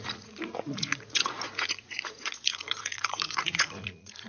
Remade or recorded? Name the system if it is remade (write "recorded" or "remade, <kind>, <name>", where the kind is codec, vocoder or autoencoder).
remade, vocoder, Vocos